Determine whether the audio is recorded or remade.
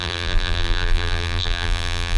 remade